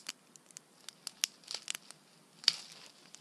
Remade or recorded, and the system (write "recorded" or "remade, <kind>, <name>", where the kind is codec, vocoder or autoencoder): recorded